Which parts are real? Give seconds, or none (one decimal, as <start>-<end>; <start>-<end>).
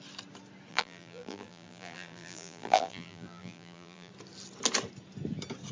0.0-0.7; 4.1-5.7